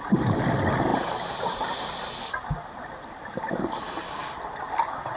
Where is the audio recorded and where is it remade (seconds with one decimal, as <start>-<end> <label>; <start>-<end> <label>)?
0.0-0.9 recorded; 0.9-4.0 remade; 4.0-5.2 recorded